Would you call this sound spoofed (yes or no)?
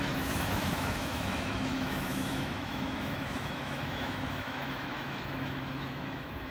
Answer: yes